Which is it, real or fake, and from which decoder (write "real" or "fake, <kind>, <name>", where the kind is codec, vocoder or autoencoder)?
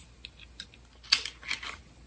real